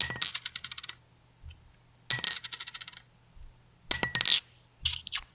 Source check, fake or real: real